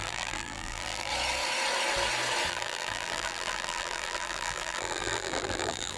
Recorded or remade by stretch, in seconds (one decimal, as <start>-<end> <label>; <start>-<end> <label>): 0.0-1.1 remade; 1.1-2.5 recorded; 2.5-6.0 remade